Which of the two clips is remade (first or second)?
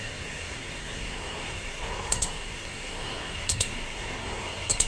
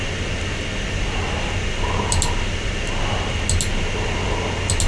first